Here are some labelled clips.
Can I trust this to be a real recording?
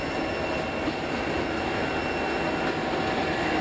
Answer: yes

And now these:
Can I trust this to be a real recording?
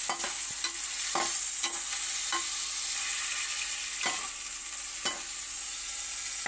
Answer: yes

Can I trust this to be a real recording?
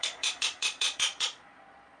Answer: no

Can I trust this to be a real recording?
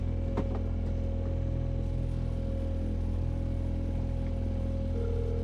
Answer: yes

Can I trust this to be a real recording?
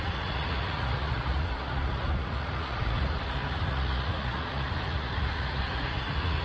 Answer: no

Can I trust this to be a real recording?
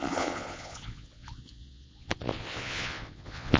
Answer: no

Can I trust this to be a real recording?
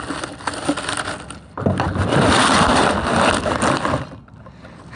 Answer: yes